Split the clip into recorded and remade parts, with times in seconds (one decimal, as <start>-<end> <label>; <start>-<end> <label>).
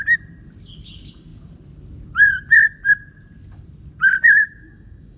0.0-4.4 recorded; 4.4-5.2 remade